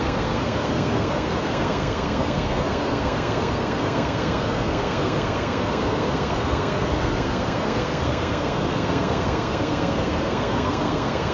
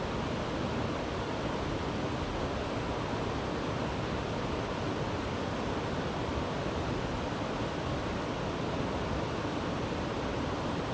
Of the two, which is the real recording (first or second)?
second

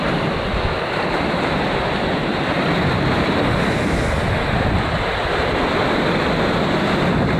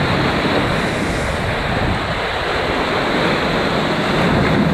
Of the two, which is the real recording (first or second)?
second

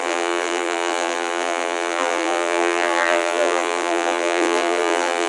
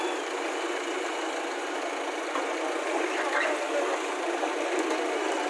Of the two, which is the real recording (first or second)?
second